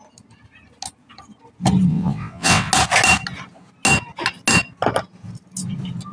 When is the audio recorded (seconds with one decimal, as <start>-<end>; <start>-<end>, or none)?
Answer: 0.0-1.9; 2.7-6.1